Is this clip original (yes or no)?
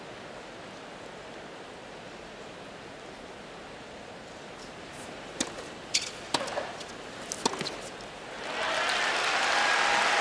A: yes